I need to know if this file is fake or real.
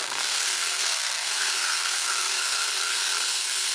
fake